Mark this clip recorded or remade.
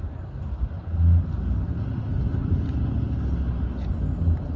recorded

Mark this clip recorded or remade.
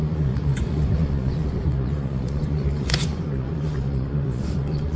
remade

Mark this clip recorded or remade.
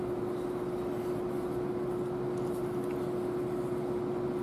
recorded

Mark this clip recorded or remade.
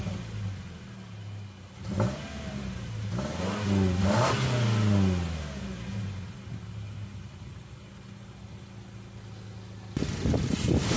recorded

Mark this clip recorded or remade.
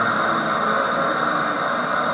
recorded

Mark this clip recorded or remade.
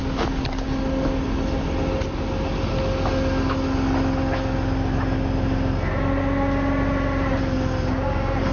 recorded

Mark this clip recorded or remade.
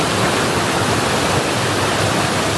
recorded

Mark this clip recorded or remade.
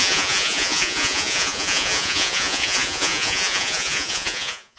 remade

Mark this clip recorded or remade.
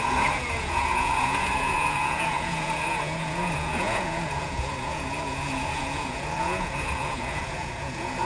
remade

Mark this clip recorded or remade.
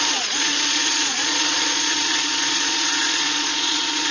remade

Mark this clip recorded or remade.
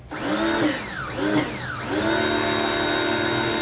recorded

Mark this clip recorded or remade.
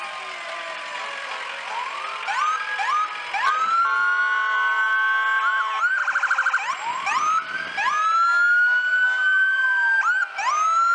recorded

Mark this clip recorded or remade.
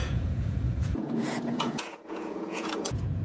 remade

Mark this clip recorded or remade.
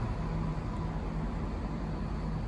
recorded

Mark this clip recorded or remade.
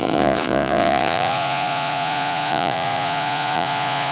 remade